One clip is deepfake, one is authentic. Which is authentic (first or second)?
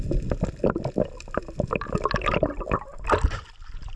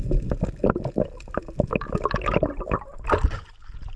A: second